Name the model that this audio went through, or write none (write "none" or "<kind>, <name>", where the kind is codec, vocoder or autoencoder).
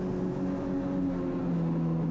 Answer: none